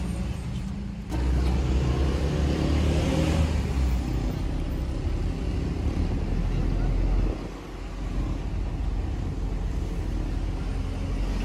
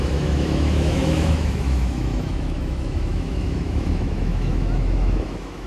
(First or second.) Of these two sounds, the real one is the first